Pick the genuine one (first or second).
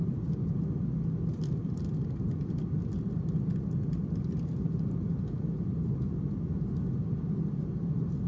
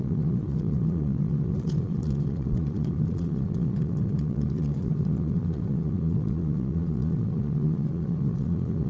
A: first